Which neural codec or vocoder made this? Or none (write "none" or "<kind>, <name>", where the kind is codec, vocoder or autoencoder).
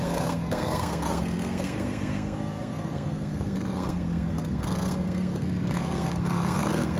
codec, SNAC